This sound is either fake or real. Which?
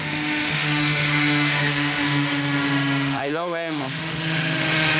fake